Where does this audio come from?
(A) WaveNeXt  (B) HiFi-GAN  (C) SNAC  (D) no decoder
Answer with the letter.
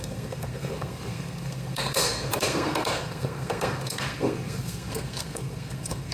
C